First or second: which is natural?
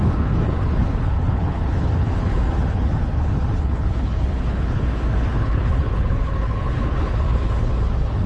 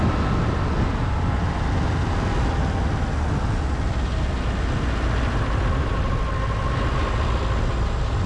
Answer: second